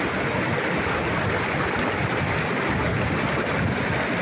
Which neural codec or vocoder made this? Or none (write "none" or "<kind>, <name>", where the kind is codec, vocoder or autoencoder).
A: none